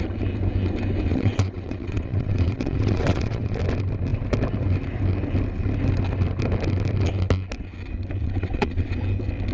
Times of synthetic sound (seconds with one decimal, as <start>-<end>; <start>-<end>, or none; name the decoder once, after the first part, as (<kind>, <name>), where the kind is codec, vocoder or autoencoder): 1.1-3.6 (vocoder, WaveNeXt); 8.2-8.9